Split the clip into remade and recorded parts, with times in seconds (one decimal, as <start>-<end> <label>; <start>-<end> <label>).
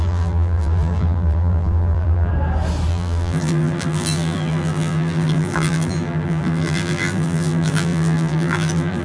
0.0-2.3 remade; 2.3-2.9 recorded; 2.9-9.0 remade